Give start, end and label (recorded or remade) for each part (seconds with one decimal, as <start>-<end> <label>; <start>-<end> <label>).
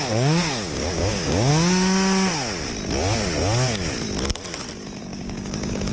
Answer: 0.0-1.5 remade; 1.5-5.0 recorded; 5.0-5.9 remade